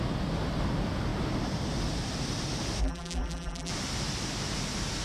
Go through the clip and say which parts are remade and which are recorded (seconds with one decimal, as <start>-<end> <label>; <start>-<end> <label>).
0.0-2.8 recorded; 2.8-3.7 remade; 3.7-5.0 recorded